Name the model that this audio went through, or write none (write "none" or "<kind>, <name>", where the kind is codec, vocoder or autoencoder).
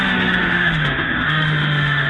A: autoencoder, DAC-VAE